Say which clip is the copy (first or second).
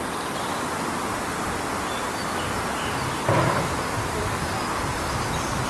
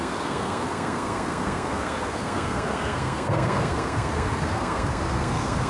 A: second